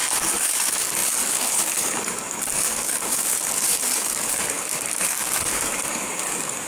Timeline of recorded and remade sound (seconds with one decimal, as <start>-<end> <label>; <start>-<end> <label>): 0.0-6.7 remade